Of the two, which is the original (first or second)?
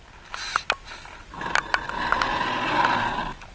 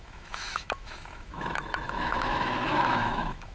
first